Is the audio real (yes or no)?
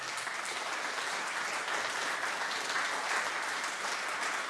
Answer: yes